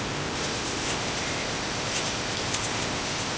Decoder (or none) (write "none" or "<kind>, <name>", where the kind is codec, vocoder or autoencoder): codec, ZipCodec